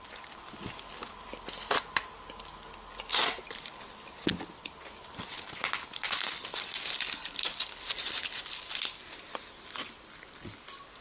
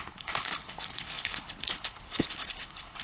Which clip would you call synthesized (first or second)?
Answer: second